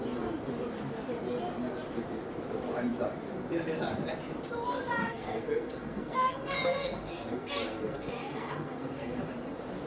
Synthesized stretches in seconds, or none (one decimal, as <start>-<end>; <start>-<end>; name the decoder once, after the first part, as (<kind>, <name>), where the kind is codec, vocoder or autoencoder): 5.0-9.2 (codec, SNAC)